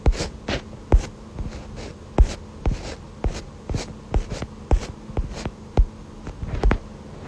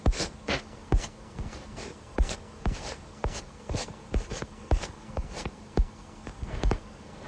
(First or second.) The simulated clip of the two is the second